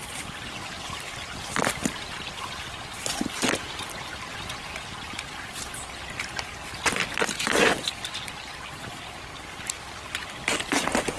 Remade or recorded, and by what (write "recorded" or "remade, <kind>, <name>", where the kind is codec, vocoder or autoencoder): recorded